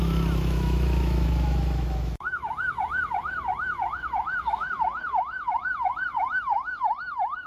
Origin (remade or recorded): remade